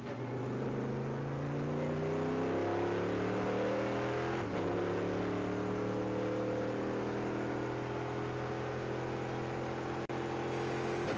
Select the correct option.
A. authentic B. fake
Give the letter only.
A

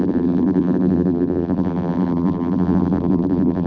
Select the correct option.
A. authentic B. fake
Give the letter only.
B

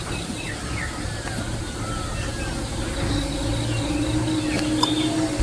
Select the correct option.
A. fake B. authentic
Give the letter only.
B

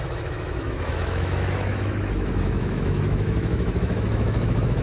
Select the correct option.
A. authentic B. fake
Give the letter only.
B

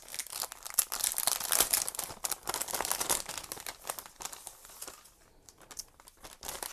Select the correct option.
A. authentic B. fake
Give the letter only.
A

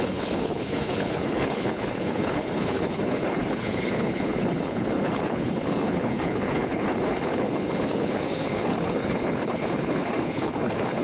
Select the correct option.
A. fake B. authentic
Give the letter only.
A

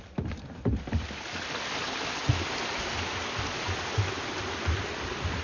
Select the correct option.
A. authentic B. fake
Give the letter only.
A